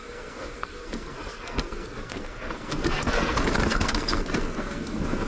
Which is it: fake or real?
fake